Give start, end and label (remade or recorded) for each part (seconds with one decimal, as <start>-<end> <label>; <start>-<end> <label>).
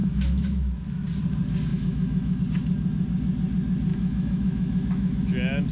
0.0-0.8 remade; 0.8-1.7 recorded; 1.7-2.4 remade; 2.4-3.9 recorded; 3.9-5.2 remade; 5.2-5.7 recorded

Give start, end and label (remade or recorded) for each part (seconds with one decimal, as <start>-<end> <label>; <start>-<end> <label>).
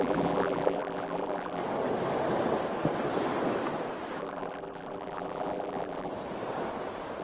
0.0-1.6 remade; 1.6-4.2 recorded; 4.2-6.1 remade; 6.1-7.2 recorded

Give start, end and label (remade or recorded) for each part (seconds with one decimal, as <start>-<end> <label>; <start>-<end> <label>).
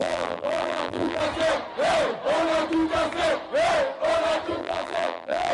0.0-1.2 remade; 1.2-4.6 recorded; 4.6-5.5 remade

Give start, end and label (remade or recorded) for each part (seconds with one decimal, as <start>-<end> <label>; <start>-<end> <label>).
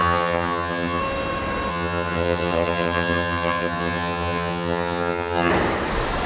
0.0-1.0 remade; 1.0-1.7 recorded; 1.7-5.5 remade; 5.5-6.3 recorded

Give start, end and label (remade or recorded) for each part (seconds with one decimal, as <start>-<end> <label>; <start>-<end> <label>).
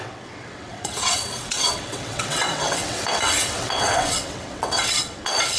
0.0-5.6 remade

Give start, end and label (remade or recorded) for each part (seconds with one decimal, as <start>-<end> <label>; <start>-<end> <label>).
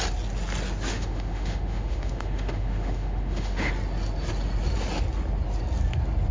0.0-0.9 recorded; 0.9-3.7 remade; 3.7-6.3 recorded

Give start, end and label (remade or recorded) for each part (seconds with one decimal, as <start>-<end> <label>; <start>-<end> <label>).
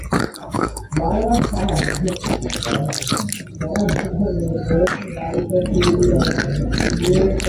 0.0-0.4 recorded; 0.4-2.1 remade; 2.1-7.5 recorded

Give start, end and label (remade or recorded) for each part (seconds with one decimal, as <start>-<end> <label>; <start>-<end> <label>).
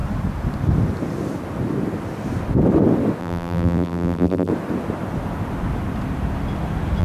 0.0-3.2 recorded; 3.2-4.5 remade; 4.5-7.0 recorded